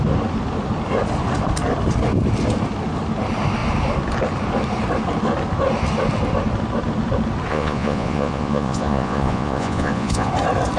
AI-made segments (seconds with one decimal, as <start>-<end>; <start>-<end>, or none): 7.5-10.3